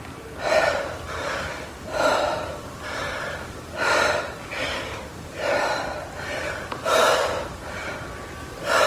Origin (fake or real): real